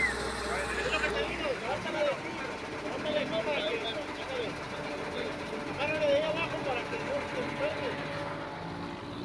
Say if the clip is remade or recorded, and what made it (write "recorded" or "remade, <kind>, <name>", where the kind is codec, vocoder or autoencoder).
recorded